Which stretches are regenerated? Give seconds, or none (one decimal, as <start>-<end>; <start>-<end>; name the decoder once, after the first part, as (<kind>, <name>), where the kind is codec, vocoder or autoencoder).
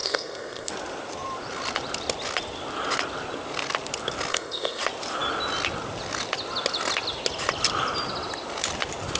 0.0-0.7 (codec, SNAC); 4.3-4.8